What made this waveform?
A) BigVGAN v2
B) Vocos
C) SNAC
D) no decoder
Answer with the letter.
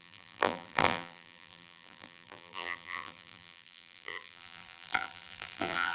A